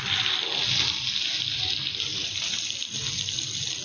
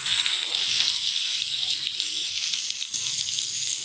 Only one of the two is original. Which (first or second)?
first